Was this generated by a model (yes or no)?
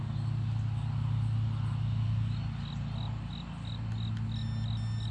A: no